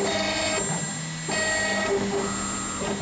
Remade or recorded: recorded